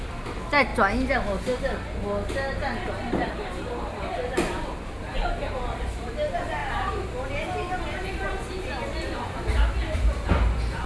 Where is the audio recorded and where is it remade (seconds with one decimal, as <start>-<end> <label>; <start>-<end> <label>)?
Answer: 0.0-10.9 recorded